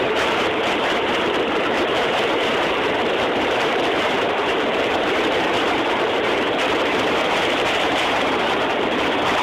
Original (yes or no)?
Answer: no